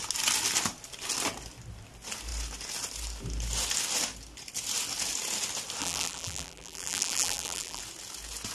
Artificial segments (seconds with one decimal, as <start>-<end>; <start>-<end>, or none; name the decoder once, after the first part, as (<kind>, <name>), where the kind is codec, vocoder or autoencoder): 5.8-7.8 (vocoder, BigVGAN v2)